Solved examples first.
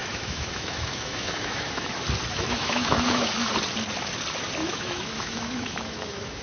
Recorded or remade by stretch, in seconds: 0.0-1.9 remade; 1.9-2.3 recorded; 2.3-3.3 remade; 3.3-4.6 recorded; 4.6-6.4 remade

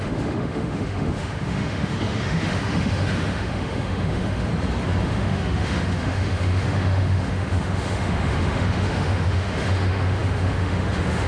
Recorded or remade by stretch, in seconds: 0.0-4.5 remade; 4.5-5.0 recorded; 5.0-11.3 remade

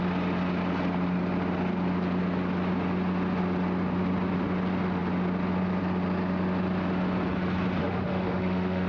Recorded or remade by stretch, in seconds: 0.0-7.8 recorded; 7.8-8.9 remade

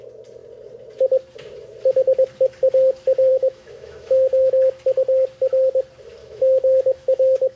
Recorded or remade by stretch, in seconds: 0.0-3.3 recorded; 3.3-4.5 remade; 4.5-6.2 recorded; 6.2-7.6 remade